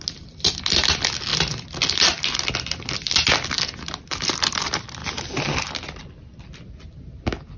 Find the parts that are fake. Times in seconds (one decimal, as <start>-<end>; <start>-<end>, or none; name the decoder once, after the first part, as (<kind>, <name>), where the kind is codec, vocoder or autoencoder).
none